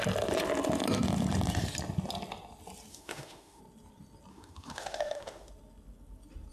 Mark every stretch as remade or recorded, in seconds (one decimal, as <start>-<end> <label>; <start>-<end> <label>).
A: 0.0-2.9 recorded; 2.9-3.6 remade; 3.6-4.3 recorded; 4.3-5.5 remade; 5.5-6.5 recorded